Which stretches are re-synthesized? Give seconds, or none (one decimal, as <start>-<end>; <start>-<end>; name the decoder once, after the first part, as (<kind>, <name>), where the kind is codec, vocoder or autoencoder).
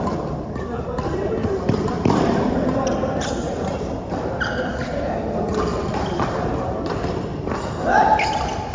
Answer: 1.4-4.3 (vocoder, BigVGAN v2); 5.7-7.5